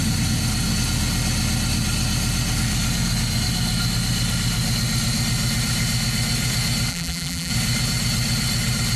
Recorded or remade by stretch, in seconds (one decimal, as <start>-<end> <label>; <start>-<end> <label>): 0.0-6.9 recorded; 6.9-7.5 remade; 7.5-9.0 recorded